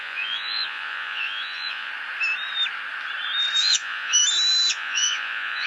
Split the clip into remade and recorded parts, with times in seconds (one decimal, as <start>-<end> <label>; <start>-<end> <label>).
0.0-1.9 remade; 1.9-3.6 recorded; 3.6-4.2 remade; 4.2-4.7 recorded; 4.7-5.7 remade